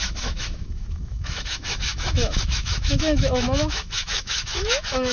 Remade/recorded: remade